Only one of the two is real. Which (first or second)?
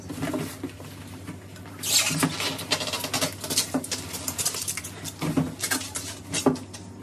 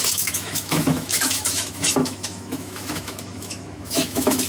first